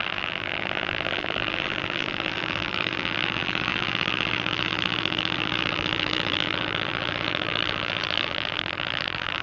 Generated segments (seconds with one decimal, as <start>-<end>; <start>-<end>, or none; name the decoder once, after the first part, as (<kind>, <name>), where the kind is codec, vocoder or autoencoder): 0.0-9.4 (vocoder, BigVGAN v2)